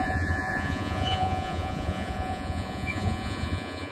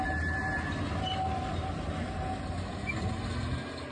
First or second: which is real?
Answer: second